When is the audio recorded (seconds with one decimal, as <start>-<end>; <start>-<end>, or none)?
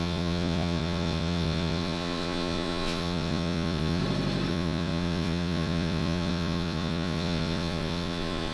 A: 4.0-4.5